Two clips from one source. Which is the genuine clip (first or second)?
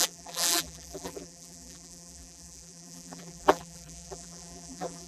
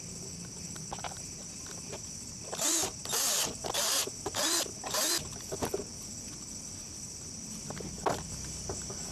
second